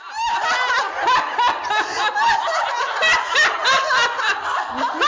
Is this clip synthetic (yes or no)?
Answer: no